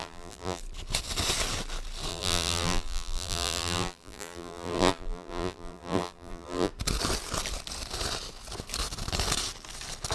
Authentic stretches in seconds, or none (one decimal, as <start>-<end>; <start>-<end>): 0.6-2.1; 6.7-10.1